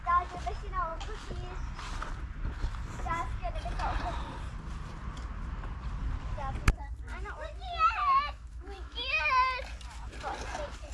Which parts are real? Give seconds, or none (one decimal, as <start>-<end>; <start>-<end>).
0.0-8.0; 9.3-10.9